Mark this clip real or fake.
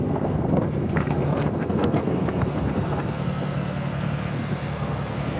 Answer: fake